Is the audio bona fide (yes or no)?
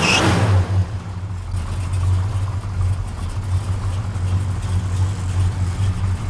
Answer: yes